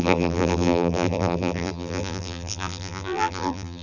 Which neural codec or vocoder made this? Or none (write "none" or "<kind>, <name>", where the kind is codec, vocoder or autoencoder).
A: vocoder, BigVGAN v2